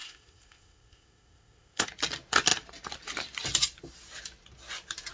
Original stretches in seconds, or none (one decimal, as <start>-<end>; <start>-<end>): 1.9-5.1